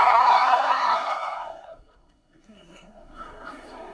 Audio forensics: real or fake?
fake